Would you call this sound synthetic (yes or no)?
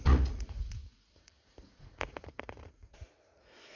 yes